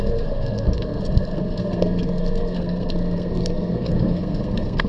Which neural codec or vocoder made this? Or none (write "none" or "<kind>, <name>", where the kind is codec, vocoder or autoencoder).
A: codec, SNAC